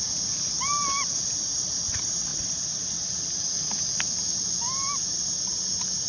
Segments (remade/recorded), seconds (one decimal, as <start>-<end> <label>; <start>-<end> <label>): 0.0-6.1 recorded